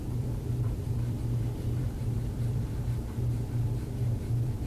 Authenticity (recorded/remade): remade